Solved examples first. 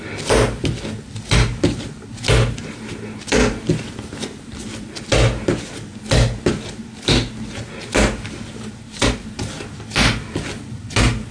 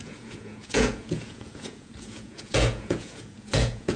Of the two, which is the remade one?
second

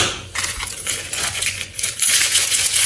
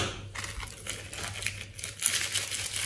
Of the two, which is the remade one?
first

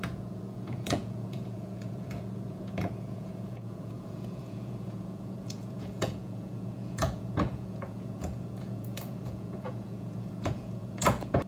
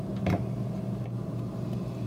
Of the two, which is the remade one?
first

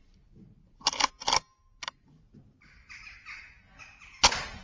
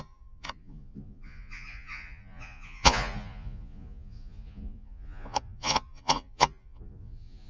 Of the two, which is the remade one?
second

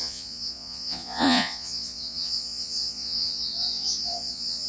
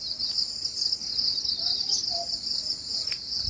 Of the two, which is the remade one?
first